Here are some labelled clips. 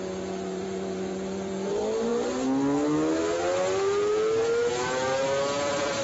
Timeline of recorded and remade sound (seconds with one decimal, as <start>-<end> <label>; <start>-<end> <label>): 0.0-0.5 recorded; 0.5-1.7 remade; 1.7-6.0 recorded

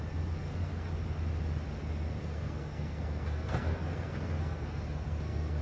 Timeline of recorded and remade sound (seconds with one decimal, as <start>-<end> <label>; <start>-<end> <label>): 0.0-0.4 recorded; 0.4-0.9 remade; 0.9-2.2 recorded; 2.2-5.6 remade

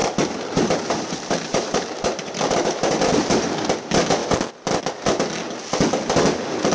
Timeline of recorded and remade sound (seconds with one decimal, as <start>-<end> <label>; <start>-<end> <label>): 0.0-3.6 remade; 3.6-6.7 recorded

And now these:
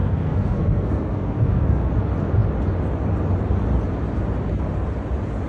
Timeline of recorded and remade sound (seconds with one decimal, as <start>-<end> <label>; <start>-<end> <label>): 0.0-1.9 remade; 1.9-5.5 recorded